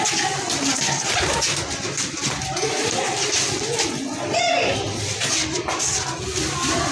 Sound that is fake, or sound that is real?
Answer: real